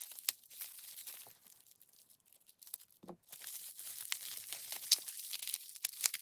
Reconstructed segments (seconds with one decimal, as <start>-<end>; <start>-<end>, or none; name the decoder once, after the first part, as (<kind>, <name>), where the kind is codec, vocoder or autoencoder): 0.0-6.2 (vocoder, BigVGAN v2)